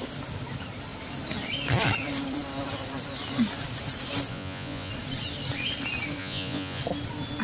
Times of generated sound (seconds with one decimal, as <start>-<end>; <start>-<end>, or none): 4.3-4.9; 6.2-6.8